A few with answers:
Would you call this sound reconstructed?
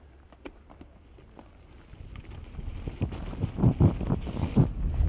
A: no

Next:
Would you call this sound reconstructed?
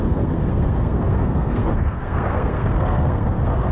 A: yes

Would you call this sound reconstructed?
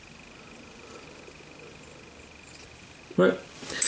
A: no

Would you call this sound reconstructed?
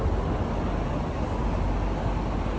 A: no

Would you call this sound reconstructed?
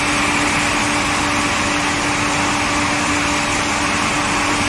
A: no